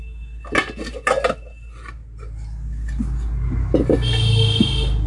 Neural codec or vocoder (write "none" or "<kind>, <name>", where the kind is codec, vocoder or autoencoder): none